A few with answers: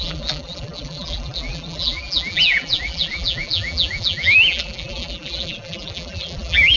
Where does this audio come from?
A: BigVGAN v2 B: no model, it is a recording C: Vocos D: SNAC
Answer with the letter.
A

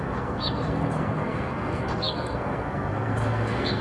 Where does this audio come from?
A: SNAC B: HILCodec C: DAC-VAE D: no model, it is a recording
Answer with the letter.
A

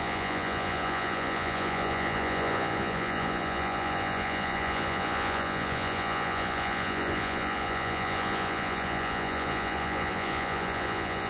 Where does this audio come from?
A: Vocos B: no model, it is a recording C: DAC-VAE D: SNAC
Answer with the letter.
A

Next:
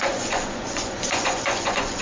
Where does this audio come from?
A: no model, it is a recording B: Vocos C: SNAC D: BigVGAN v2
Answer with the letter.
B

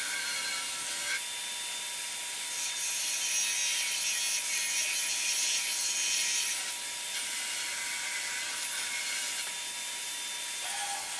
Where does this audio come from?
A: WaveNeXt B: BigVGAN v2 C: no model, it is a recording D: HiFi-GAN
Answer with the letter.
C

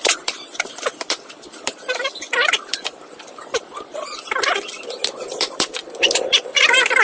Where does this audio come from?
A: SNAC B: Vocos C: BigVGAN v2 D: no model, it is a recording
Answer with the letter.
C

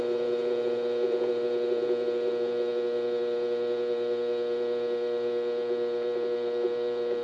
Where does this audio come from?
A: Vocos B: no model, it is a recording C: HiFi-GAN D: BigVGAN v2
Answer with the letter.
D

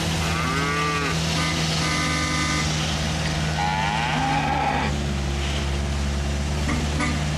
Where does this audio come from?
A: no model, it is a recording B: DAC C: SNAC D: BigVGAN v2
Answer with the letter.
A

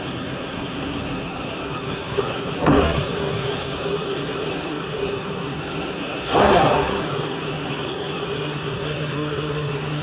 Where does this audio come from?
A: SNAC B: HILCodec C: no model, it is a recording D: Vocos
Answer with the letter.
A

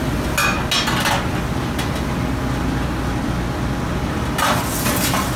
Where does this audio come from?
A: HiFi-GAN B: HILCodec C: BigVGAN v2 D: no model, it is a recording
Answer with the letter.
D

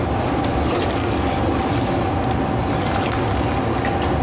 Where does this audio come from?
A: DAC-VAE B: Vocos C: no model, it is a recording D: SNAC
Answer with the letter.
C